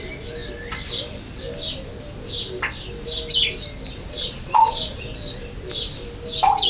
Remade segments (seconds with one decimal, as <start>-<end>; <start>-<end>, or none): 4.0-5.0